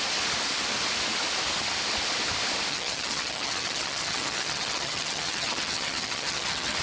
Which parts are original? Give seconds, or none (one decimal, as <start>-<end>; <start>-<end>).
0.0-2.7